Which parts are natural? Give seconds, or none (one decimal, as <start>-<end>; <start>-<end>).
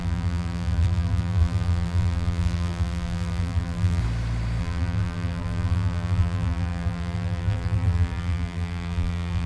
4.0-4.6